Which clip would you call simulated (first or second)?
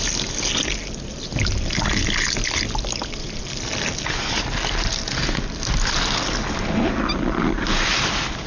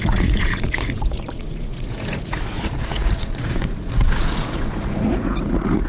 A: second